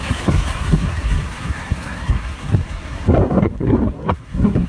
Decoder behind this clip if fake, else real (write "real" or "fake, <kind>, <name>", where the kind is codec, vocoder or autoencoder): fake, codec, SNAC